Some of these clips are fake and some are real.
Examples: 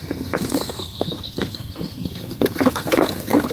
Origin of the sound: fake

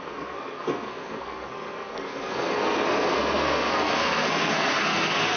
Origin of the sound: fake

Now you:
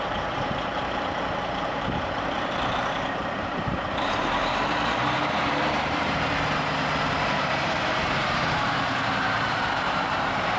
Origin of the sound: fake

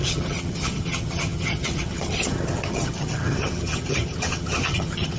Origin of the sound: fake